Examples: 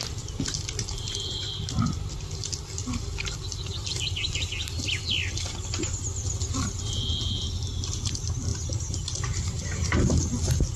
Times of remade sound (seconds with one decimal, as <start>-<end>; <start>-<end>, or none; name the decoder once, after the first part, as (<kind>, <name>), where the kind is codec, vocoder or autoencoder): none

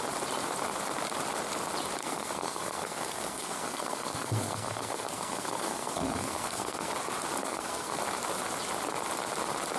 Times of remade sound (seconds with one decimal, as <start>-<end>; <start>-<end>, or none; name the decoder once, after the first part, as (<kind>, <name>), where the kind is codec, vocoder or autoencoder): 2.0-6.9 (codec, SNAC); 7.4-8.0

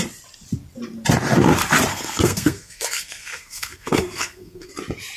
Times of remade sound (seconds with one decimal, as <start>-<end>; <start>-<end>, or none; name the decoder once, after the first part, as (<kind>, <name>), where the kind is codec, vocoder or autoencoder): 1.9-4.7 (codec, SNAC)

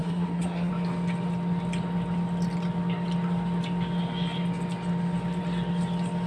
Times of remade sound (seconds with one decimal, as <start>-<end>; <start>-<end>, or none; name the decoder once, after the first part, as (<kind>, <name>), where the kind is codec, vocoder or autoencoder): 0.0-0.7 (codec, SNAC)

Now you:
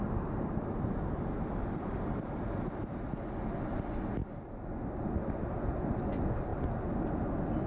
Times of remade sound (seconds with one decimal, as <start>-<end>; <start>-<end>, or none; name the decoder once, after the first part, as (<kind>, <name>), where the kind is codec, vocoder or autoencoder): none